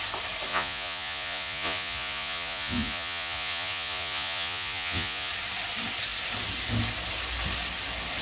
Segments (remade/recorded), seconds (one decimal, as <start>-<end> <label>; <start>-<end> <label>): 0.0-0.5 recorded; 0.5-5.3 remade; 5.3-8.2 recorded